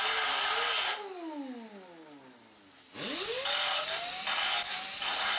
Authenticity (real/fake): real